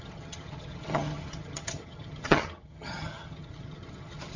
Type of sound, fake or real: fake